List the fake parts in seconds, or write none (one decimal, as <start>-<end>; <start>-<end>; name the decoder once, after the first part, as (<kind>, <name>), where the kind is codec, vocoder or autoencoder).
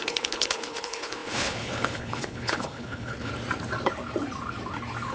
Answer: 0.0-3.3 (codec, HILCodec)